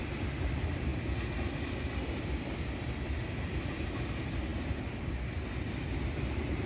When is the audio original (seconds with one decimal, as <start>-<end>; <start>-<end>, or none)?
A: 0.0-6.7